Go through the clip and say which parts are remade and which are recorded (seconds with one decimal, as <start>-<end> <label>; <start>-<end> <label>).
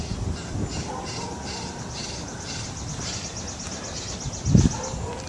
0.0-5.3 recorded